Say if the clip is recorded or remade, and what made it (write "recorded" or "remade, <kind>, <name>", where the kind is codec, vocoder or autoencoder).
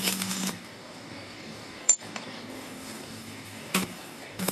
remade, codec, DAC